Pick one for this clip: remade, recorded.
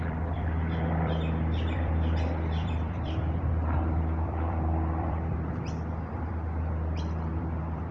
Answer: remade